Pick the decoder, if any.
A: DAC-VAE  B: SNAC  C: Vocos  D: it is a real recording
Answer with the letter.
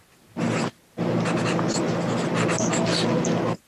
D